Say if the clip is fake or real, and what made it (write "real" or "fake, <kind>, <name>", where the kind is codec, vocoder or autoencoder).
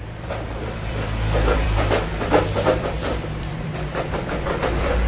fake, vocoder, BigVGAN v2